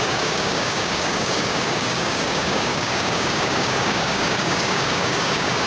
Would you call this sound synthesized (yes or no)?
yes